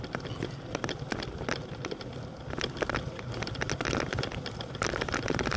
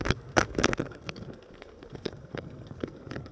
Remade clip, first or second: second